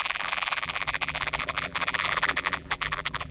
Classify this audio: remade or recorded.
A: remade